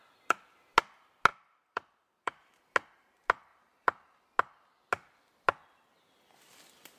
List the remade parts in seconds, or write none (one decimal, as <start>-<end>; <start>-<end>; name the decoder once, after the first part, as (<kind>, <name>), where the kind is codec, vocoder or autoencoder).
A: 1.3-2.3 (vocoder, BigVGAN v2); 3.5-4.2